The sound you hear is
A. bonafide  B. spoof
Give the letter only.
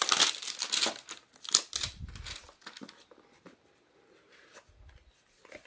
A